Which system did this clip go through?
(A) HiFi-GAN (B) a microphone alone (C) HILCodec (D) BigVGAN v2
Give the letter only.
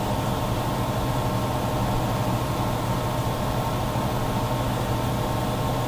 B